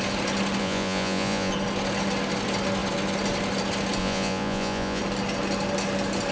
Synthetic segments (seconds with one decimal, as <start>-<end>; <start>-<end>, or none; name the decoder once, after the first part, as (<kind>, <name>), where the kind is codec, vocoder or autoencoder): 0.6-1.5 (vocoder, Vocos); 4.0-5.0